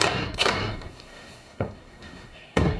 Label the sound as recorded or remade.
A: remade